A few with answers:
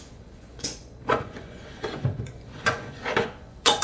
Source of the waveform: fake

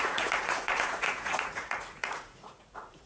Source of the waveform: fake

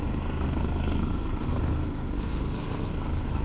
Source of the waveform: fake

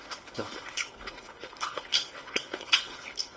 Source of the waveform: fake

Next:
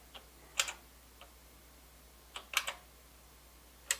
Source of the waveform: real